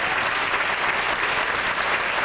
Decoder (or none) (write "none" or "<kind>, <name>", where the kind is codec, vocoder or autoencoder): none